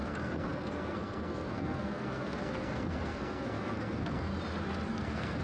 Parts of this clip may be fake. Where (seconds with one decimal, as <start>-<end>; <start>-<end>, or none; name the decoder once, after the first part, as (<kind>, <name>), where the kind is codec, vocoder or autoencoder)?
0.0-4.3 (codec, SNAC); 4.9-5.4